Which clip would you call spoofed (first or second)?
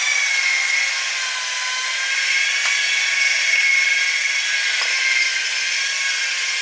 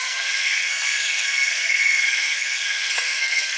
second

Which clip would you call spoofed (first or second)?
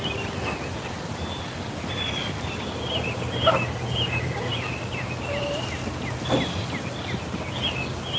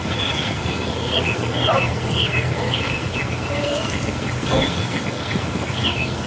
second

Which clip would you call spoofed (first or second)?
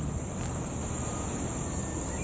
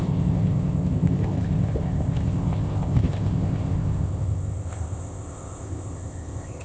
second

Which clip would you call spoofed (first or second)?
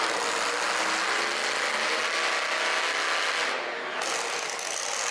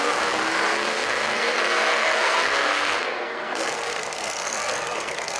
second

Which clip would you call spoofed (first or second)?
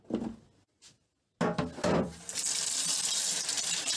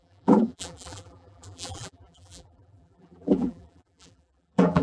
second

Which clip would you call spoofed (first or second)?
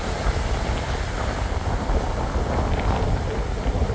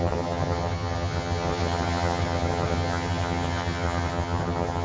second